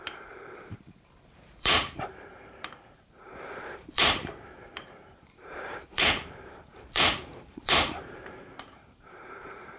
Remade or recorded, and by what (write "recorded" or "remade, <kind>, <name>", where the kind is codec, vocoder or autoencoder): remade, vocoder, BigVGAN v2